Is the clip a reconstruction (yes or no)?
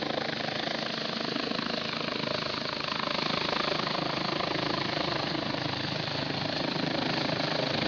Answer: no